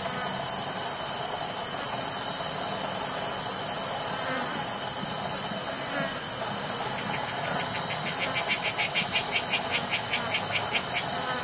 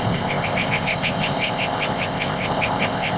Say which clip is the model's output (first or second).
second